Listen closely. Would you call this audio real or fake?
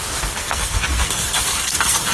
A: fake